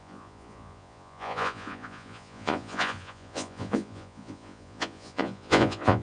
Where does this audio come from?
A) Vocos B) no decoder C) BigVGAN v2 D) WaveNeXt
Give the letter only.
A